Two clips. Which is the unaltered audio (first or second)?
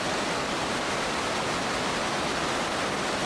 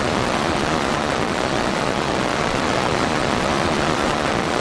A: first